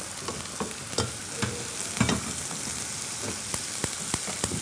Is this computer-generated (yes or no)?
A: no